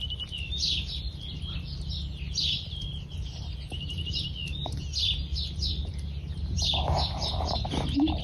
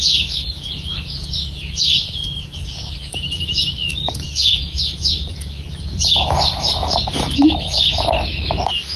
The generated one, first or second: second